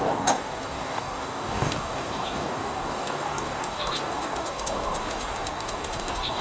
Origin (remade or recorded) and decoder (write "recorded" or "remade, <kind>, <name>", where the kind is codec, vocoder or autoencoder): remade, codec, DAC